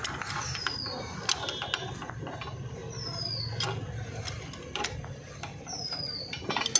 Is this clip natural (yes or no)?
yes